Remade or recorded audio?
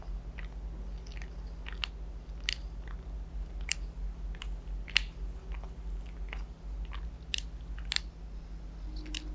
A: recorded